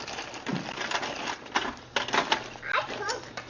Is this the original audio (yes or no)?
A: yes